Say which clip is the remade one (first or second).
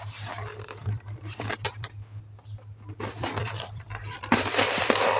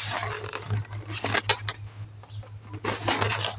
first